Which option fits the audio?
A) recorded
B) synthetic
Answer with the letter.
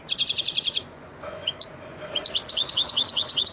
B